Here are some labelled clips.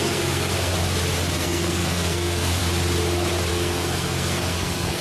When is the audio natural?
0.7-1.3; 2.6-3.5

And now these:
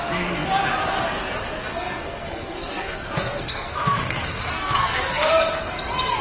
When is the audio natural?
0.0-1.7; 5.3-6.2